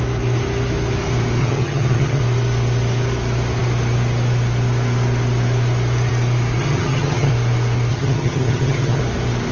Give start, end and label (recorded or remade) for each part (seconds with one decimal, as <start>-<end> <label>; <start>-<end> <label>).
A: 0.0-1.4 recorded; 1.4-2.2 remade; 2.2-6.6 recorded; 6.6-7.3 remade; 7.3-7.9 recorded; 7.9-9.0 remade; 9.0-9.5 recorded